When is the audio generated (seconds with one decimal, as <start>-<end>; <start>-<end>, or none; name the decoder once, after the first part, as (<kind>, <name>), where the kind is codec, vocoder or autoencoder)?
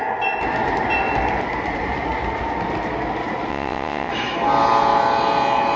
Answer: 3.5-4.1 (vocoder, WaveNeXt)